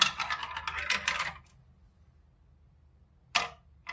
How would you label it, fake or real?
real